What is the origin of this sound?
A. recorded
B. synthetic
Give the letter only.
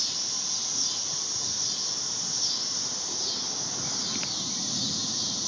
A